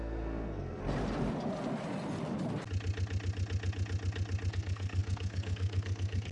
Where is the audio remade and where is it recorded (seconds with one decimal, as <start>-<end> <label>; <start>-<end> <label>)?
0.0-0.8 remade; 0.8-4.5 recorded; 4.5-6.3 remade